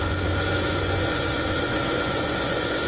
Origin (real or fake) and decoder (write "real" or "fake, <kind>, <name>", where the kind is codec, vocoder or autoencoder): fake, vocoder, Vocos